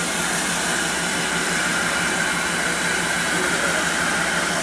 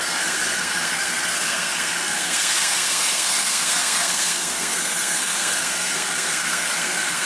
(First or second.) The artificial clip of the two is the second